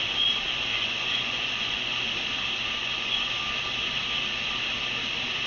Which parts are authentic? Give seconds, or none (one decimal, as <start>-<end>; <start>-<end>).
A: 0.0-0.7; 2.1-2.8; 3.3-5.5